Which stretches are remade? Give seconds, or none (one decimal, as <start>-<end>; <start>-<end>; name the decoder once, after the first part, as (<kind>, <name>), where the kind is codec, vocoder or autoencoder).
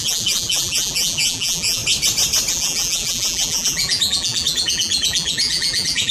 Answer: 0.0-1.8 (vocoder, BigVGAN v2); 2.5-6.1